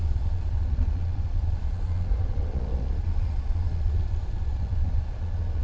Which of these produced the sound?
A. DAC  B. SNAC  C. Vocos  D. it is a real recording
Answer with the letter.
C